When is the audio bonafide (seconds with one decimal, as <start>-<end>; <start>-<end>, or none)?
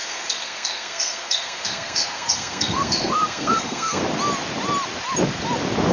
4.0-5.9